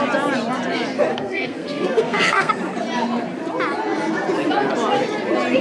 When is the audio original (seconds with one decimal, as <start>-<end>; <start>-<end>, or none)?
0.0-1.1; 2.5-5.6

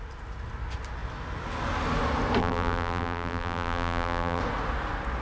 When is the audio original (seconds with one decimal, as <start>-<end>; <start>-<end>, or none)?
0.0-2.4; 4.4-5.2

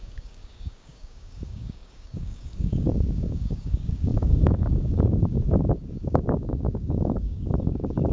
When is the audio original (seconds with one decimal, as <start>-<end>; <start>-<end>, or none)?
none